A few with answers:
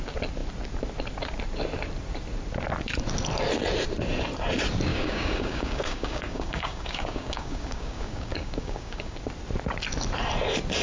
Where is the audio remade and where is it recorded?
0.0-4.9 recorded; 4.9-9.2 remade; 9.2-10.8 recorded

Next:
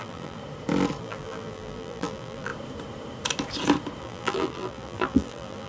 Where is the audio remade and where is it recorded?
0.0-0.4 remade; 0.4-1.0 recorded; 1.0-2.5 remade; 2.5-4.0 recorded; 4.0-5.7 remade

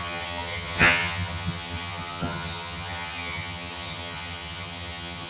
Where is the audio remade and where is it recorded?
0.0-5.3 remade

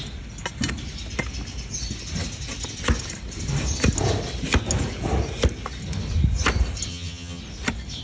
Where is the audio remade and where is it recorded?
0.0-6.9 recorded; 6.9-7.4 remade; 7.4-8.0 recorded